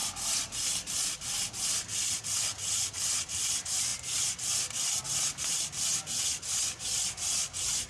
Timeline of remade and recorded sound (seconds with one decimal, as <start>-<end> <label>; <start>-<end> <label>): 0.0-7.9 recorded

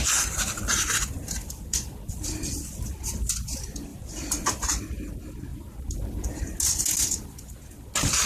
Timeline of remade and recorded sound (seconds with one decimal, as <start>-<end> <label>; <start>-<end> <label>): 0.0-3.0 remade; 3.0-3.9 recorded; 3.9-4.8 remade; 4.8-5.5 recorded; 5.5-6.4 remade; 6.4-8.3 recorded

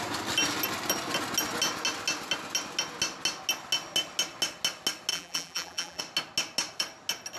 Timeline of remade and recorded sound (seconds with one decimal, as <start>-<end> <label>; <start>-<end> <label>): 0.0-5.1 recorded; 5.1-6.0 remade; 6.0-7.4 recorded

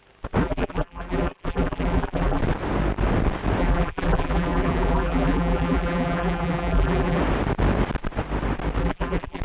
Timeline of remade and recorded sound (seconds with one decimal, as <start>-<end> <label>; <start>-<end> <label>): 0.0-0.4 recorded; 0.4-2.4 remade; 2.4-3.6 recorded; 3.6-7.2 remade; 7.2-8.8 recorded; 8.8-9.4 remade